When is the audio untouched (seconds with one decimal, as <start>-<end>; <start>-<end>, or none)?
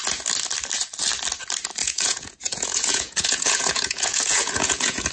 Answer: 0.0-1.8